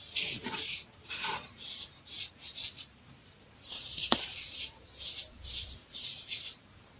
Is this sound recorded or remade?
remade